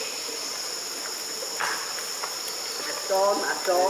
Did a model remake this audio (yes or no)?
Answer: no